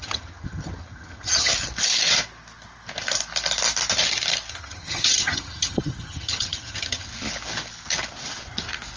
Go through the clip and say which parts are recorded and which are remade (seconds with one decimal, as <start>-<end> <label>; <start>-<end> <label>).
0.0-1.5 remade; 1.5-4.5 recorded; 4.5-7.1 remade; 7.1-9.0 recorded